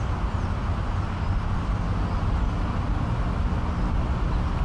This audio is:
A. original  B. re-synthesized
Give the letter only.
A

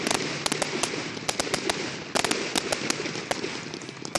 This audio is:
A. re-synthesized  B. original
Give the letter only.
B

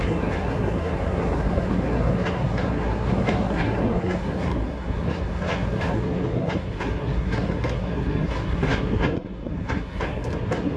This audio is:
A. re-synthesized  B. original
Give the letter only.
A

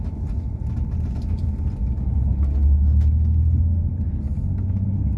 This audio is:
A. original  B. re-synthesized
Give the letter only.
A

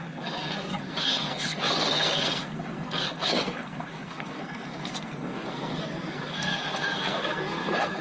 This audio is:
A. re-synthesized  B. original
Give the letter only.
A